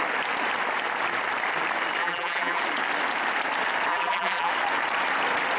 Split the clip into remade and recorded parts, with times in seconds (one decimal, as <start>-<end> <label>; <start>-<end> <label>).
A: 0.0-2.0 recorded; 2.0-2.6 remade; 2.6-3.9 recorded; 3.9-4.5 remade; 4.5-5.6 recorded